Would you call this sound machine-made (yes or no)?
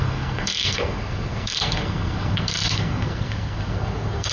yes